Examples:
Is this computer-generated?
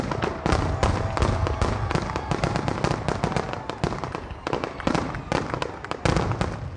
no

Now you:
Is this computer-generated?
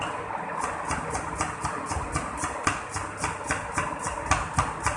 no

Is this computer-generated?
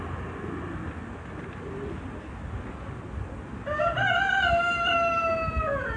no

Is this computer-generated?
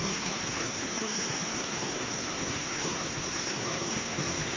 yes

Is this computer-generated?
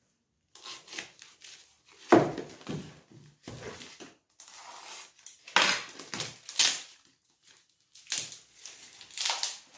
no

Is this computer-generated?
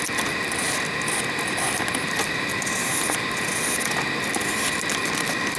no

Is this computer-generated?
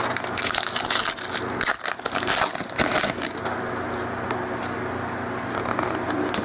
no